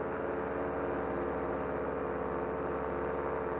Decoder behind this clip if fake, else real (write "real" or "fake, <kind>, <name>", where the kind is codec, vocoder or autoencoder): real